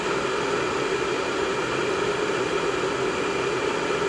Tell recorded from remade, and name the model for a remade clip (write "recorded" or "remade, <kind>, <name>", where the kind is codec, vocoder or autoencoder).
recorded